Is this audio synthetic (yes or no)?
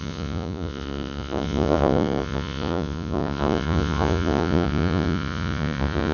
yes